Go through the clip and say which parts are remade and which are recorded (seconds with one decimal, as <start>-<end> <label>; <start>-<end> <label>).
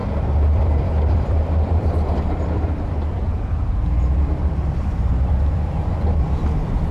0.0-0.5 recorded; 0.5-6.9 remade